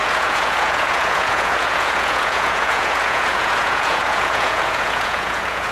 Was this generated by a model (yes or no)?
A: yes